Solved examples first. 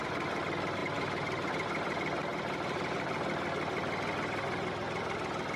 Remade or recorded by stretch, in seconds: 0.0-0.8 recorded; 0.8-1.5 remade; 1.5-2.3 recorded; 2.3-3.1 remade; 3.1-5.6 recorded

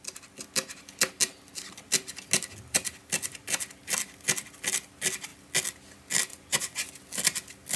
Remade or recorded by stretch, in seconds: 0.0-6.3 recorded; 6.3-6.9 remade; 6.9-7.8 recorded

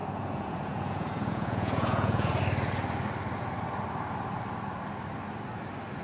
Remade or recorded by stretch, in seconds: 0.0-2.4 remade; 2.4-6.0 recorded

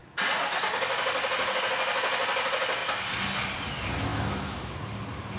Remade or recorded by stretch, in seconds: 0.0-4.1 recorded; 4.1-4.7 remade; 4.7-5.4 recorded

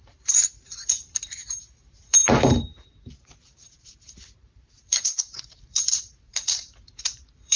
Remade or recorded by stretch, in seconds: 0.0-7.6 remade

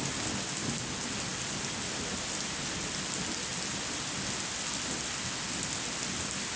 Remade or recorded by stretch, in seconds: 0.0-6.6 recorded

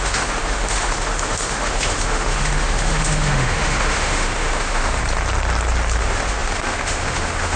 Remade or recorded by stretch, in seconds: 0.0-5.0 remade; 5.0-6.0 recorded; 6.0-7.6 remade

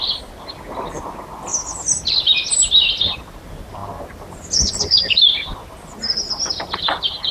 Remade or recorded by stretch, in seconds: 0.0-7.3 recorded